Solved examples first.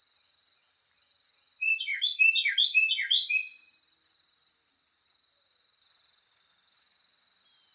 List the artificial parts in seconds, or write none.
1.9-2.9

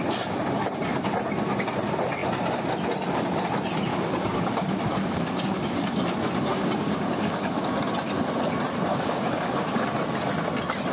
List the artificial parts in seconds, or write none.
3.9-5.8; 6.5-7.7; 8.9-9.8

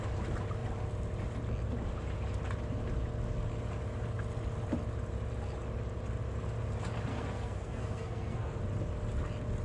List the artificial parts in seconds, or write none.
7.1-8.6